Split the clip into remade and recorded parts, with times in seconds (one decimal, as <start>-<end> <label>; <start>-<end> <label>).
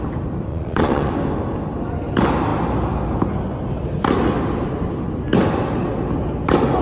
0.0-0.5 recorded; 0.5-1.1 remade; 1.1-6.8 recorded